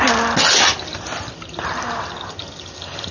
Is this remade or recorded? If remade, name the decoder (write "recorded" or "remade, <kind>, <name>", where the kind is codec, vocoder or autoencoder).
recorded